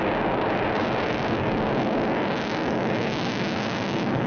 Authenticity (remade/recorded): recorded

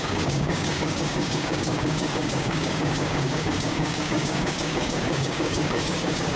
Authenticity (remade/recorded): remade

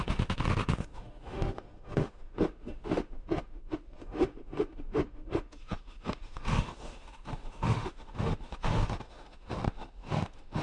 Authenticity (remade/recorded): remade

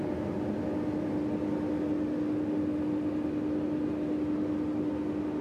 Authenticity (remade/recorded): recorded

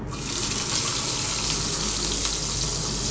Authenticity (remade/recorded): recorded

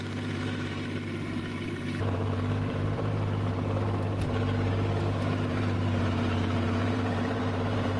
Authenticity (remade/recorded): remade